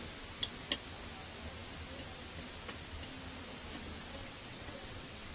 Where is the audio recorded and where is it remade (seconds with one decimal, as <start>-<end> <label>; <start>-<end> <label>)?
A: 0.0-4.2 recorded; 4.2-5.3 remade